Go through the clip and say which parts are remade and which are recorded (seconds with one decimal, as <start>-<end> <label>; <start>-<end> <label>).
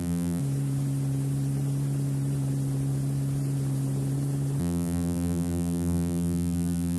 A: 0.0-0.4 remade; 0.4-4.6 recorded; 4.6-7.0 remade